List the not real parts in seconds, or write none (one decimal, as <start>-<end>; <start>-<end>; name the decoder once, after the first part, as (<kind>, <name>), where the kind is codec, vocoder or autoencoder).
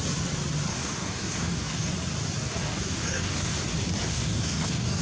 0.7-1.9 (codec, DAC); 2.5-3.5; 4.1-5.0